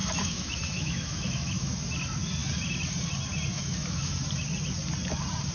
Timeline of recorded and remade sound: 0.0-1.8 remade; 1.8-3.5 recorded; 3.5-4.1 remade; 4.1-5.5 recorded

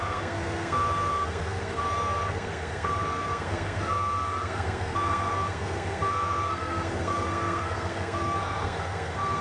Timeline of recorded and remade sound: 0.0-9.4 remade